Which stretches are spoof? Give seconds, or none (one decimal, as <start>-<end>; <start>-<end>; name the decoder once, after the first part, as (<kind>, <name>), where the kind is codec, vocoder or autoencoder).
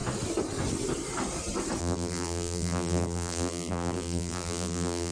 1.8-5.1 (vocoder, BigVGAN v2)